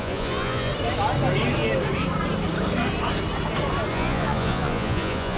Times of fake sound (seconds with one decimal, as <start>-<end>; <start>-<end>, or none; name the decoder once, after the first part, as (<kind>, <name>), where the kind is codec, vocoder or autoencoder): 0.0-0.7 (vocoder, Vocos); 3.9-5.4